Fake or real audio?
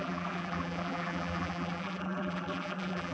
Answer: fake